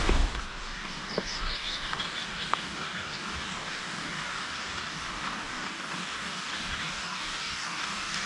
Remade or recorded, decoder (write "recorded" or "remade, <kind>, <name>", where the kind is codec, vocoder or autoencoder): remade, codec, DAC